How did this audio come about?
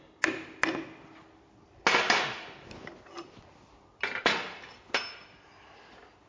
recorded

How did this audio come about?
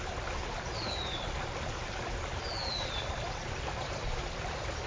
recorded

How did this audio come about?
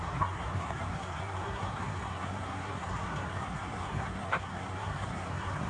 remade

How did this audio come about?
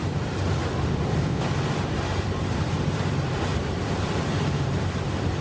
remade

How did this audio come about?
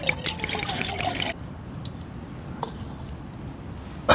recorded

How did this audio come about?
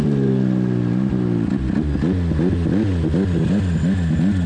recorded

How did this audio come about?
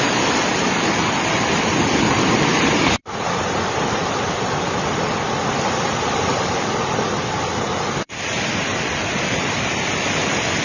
remade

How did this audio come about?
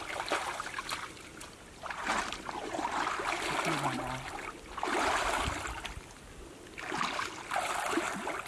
recorded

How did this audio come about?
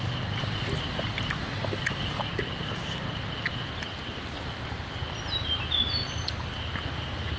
recorded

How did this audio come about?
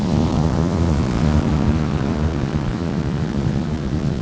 remade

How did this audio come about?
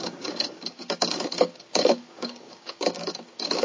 remade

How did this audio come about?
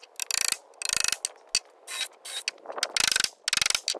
recorded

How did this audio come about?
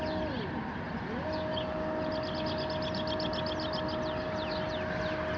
recorded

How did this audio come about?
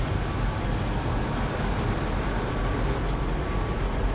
recorded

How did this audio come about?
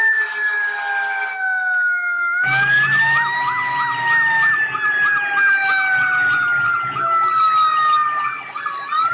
recorded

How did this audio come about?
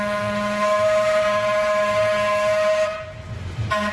recorded